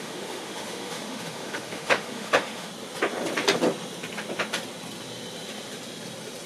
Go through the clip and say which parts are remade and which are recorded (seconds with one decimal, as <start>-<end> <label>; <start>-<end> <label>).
0.0-2.7 remade; 2.7-6.5 recorded